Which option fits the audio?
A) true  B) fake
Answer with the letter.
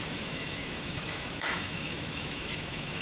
B